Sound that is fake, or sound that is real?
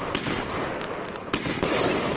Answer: real